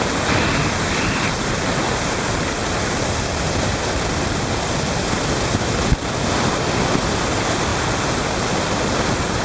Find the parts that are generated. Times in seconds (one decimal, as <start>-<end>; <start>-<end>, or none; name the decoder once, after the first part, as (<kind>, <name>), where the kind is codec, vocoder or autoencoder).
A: none